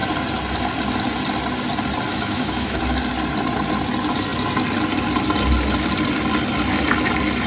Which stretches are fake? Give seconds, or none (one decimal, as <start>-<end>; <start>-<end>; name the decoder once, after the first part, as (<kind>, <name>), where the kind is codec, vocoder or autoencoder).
2.1-2.8 (autoencoder, DAC-VAE)